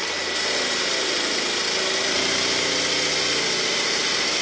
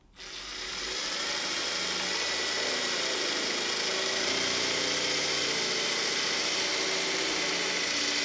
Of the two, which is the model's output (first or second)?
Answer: first